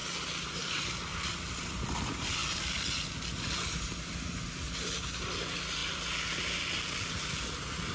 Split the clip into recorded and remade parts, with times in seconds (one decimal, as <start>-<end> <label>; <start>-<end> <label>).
0.0-7.9 recorded